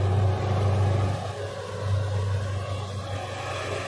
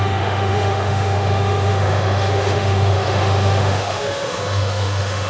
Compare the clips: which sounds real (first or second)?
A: first